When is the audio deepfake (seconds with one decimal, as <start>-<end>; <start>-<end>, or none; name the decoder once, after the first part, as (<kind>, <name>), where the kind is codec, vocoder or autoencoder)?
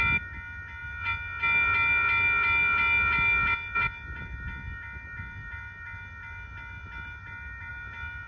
none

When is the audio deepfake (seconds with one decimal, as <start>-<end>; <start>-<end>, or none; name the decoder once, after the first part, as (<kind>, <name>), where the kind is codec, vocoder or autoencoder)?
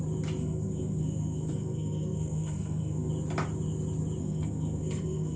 0.4-3.1 (codec, SNAC); 4.2-5.4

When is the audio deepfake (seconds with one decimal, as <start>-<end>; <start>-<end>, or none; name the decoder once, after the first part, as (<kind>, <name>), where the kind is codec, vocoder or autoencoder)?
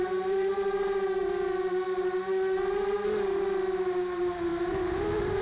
0.0-5.4 (vocoder, BigVGAN v2)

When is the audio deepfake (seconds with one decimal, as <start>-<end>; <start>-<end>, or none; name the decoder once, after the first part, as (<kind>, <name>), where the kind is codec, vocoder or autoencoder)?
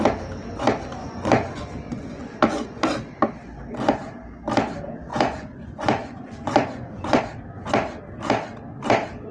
1.0-2.8 (vocoder, Vocos); 5.1-7.2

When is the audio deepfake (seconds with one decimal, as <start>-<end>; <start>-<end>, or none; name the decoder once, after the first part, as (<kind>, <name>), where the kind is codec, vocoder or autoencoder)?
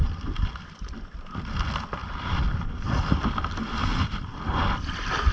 0.0-5.3 (vocoder, BigVGAN v2)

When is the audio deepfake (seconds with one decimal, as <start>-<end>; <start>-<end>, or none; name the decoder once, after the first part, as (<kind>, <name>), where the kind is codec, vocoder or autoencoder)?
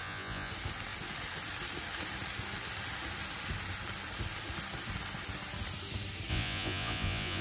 0.0-0.5 (vocoder, Vocos); 6.3-7.4